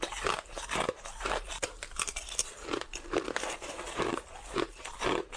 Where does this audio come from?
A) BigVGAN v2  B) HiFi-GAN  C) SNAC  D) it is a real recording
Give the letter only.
A